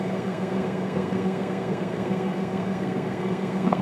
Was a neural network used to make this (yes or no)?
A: yes